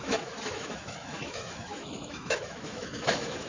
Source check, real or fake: fake